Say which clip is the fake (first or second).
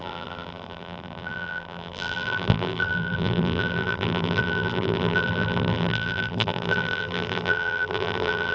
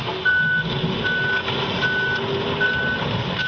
first